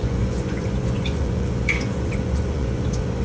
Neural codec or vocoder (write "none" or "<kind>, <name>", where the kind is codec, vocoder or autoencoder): vocoder, Vocos